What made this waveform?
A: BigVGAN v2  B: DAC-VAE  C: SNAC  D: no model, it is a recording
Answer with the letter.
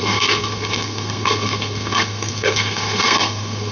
C